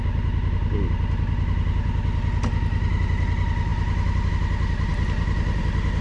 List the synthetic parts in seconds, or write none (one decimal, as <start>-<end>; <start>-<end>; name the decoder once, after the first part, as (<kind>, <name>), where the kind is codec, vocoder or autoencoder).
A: none